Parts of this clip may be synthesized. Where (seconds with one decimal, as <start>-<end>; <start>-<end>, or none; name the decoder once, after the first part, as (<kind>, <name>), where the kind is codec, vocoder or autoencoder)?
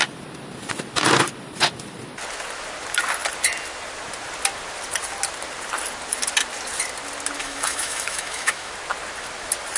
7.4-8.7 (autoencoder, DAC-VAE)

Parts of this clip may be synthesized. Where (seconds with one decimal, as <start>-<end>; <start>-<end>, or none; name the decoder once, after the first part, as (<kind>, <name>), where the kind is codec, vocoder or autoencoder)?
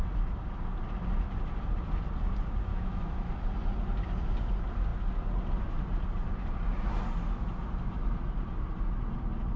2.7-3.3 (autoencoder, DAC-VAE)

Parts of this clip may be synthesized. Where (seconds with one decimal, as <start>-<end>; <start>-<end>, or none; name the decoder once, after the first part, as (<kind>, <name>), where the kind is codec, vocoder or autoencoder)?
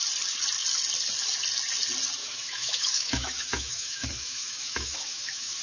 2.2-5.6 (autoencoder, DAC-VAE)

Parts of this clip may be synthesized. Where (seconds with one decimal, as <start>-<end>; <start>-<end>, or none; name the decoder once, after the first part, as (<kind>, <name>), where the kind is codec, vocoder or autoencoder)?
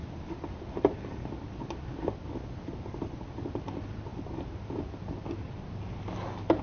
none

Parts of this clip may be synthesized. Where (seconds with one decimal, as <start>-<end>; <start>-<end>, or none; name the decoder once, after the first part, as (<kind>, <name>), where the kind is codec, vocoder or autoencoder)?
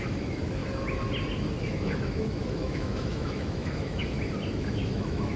0.0-0.6 (autoencoder, DAC-VAE); 1.6-4.0; 4.5-5.4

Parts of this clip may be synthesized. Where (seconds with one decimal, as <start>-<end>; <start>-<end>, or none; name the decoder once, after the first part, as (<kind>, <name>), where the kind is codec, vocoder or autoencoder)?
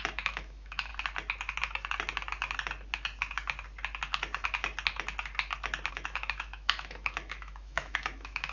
0.0-0.9 (autoencoder, DAC-VAE); 5.9-8.5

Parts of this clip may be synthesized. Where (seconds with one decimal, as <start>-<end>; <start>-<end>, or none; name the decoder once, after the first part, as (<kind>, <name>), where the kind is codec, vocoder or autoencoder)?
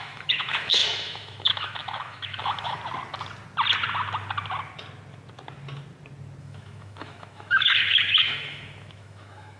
0.0-2.8 (autoencoder, DAC-VAE); 6.4-9.6